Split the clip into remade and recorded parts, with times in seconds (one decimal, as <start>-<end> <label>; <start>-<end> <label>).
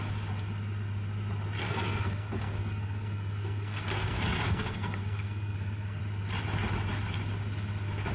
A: 0.0-1.6 recorded; 1.6-6.0 remade; 6.0-8.1 recorded